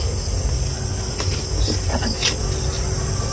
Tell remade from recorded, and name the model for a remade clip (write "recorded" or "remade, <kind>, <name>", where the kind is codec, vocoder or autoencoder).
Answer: recorded